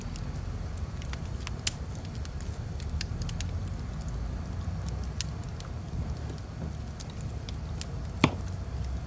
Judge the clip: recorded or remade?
recorded